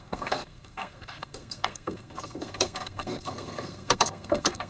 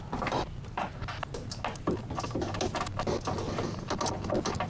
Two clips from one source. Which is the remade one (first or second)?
first